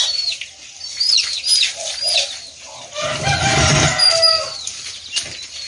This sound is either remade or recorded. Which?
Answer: recorded